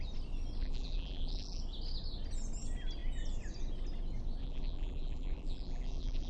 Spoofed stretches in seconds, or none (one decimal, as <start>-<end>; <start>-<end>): 0.6-1.6; 4.4-6.3